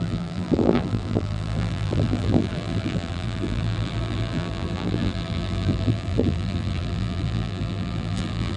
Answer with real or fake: fake